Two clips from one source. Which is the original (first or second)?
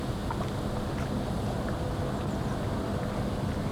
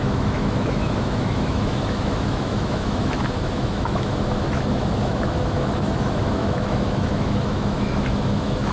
first